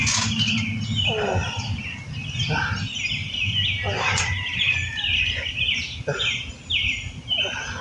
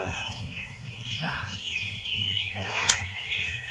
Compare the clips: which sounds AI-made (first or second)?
second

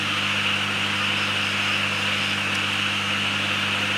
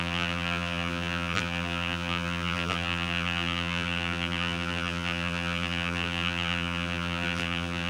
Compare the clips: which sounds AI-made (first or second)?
second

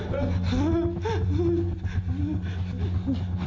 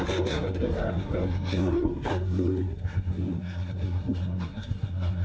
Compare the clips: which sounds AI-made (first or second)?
second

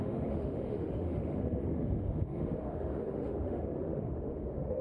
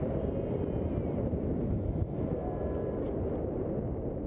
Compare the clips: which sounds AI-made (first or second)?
first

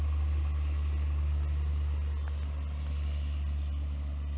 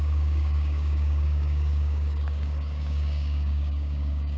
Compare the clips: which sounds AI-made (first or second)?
second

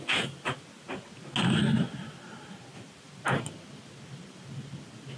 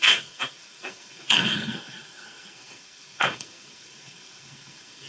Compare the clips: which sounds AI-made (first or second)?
second